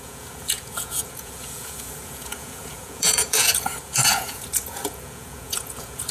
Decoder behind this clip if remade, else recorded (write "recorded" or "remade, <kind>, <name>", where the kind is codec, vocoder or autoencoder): remade, vocoder, Vocos